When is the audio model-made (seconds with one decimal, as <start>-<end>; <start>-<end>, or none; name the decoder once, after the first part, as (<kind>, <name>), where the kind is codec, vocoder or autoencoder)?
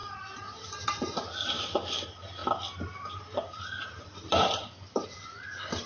0.0-5.9 (vocoder, BigVGAN v2)